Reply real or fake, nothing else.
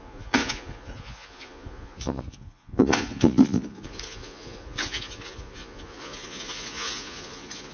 fake